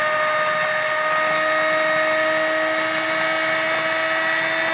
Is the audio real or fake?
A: real